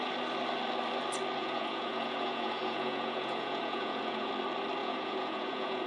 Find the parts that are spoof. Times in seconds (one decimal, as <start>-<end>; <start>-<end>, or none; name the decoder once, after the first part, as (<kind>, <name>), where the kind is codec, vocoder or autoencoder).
1.4-4.3 (vocoder, Vocos); 4.8-5.9